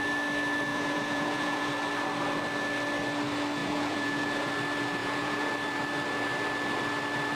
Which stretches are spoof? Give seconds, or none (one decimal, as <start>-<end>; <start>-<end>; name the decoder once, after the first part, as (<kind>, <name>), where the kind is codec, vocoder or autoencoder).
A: 0.7-1.7 (vocoder, Vocos); 3.6-4.5; 5.0-5.5